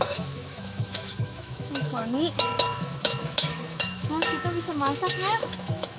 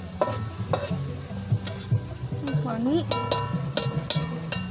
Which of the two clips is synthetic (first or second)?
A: first